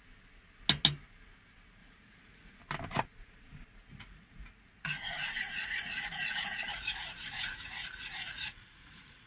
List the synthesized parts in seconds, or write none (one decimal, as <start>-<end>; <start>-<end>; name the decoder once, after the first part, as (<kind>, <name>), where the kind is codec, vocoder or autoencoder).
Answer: 1.8-2.6 (vocoder, Vocos); 3.9-9.3